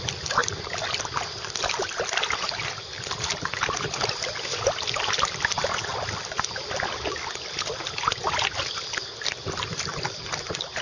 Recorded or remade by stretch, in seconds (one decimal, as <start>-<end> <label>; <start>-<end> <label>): 0.0-10.8 recorded